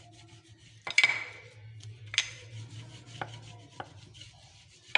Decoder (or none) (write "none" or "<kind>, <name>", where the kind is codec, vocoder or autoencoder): none